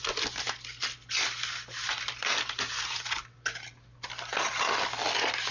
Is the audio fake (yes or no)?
no